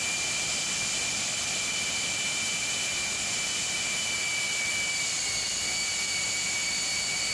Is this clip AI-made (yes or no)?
yes